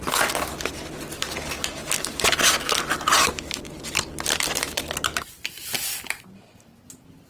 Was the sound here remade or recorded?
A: recorded